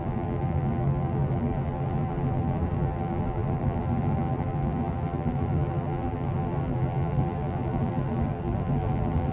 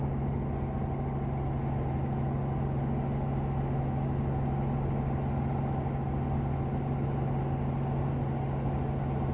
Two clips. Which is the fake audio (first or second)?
first